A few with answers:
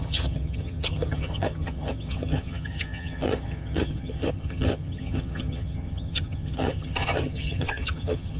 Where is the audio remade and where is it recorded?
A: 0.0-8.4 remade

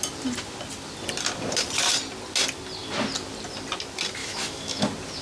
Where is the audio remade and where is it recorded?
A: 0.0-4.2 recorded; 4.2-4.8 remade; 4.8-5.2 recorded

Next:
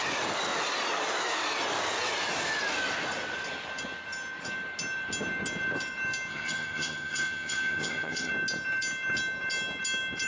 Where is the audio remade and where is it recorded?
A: 0.0-6.3 recorded; 6.3-8.3 remade; 8.3-10.3 recorded

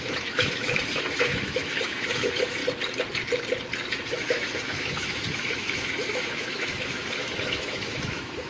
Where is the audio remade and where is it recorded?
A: 0.0-2.6 remade; 2.6-4.1 recorded; 4.1-8.5 remade

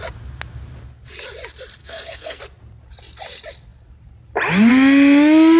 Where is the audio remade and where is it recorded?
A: 0.0-1.8 recorded; 1.8-2.4 remade; 2.4-5.6 recorded

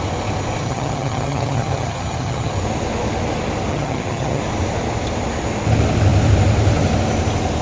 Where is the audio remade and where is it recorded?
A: 0.0-0.6 recorded; 0.6-2.5 remade; 2.5-3.7 recorded; 3.7-4.4 remade; 4.4-7.6 recorded

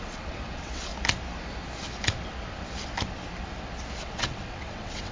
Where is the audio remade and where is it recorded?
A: 0.0-0.9 remade; 0.9-4.0 recorded; 4.0-5.1 remade